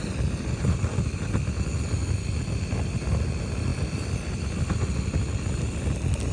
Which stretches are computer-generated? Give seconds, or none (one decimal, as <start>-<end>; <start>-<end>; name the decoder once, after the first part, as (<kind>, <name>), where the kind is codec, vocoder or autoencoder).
none